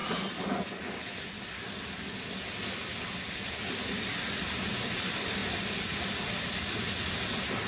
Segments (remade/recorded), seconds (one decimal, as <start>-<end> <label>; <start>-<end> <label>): 0.0-7.7 recorded